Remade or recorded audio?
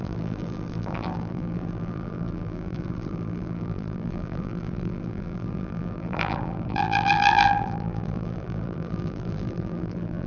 remade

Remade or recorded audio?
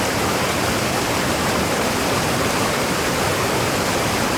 recorded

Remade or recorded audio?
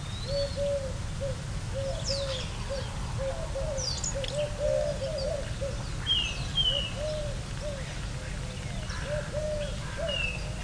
recorded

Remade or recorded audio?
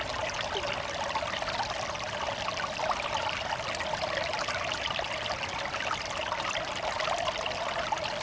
recorded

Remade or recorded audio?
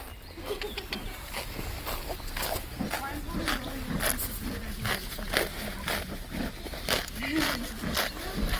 recorded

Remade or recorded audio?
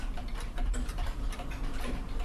remade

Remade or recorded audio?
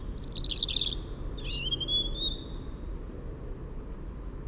recorded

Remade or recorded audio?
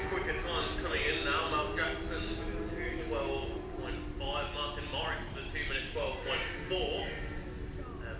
recorded